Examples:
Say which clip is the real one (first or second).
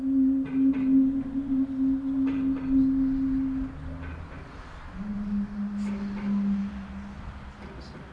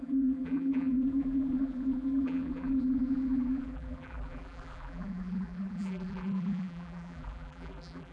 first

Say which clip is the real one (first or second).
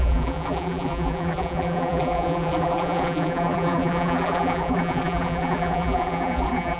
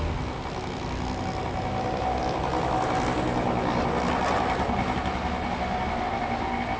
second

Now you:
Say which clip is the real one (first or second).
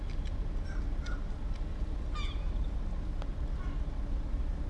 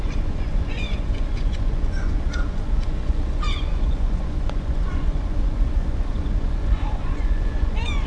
first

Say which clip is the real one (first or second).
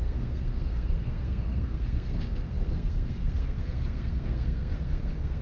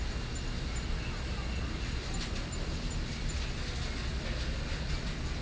second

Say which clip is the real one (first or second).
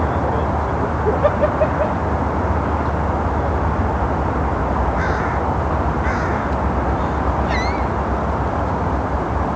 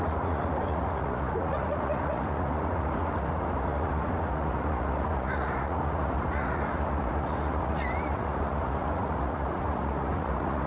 first